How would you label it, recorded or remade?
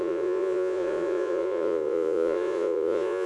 remade